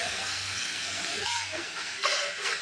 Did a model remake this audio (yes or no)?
yes